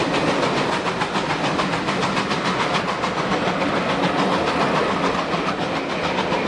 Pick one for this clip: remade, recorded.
recorded